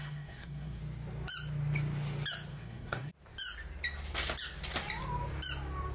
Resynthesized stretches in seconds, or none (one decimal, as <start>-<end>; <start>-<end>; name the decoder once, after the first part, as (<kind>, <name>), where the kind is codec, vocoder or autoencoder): 0.0-0.8 (codec, SNAC); 2.5-3.1